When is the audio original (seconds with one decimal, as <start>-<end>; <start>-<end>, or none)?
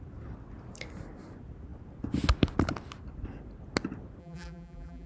0.0-4.2